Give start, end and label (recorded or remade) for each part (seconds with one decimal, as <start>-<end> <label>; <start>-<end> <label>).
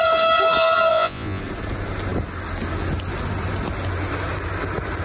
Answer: 0.0-0.9 recorded; 0.9-1.4 remade; 1.4-5.0 recorded